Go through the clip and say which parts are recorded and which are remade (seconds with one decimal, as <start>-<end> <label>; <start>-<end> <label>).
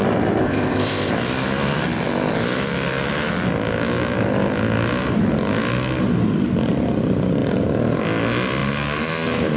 0.0-0.4 recorded; 0.4-1.1 remade; 1.1-9.6 recorded